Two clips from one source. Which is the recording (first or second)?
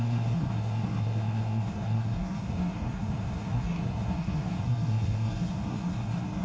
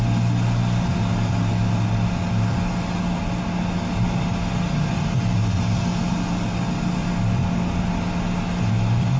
second